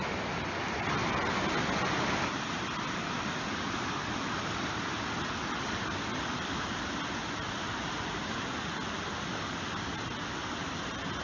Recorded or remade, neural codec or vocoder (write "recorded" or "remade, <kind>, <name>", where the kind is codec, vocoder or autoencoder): recorded